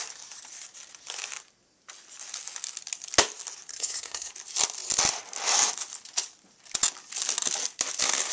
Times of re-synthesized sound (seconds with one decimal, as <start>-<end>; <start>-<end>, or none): 3.7-4.3